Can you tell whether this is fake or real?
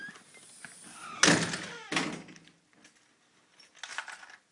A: real